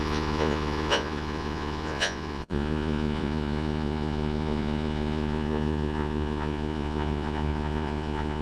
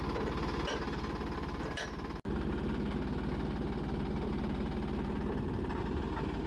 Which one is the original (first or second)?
second